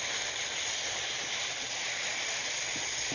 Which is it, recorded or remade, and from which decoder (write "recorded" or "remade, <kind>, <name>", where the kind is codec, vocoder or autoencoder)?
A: recorded